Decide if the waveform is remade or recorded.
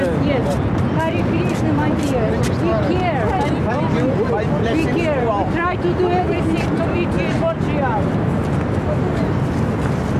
recorded